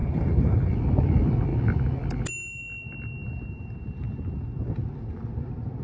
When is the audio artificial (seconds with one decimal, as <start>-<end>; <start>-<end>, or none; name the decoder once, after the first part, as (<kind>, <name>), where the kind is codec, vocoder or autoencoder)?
0.0-0.7 (codec, HILCodec)